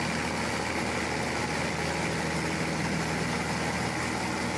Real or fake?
real